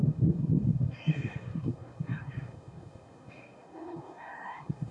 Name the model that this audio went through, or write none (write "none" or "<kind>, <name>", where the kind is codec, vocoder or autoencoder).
codec, SNAC